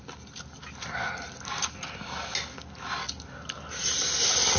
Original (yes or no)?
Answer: yes